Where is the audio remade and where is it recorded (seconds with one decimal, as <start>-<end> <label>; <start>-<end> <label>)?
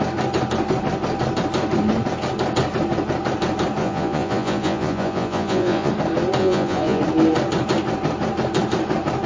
0.0-3.8 recorded; 3.8-5.9 remade; 5.9-6.4 recorded; 6.4-7.0 remade; 7.0-9.3 recorded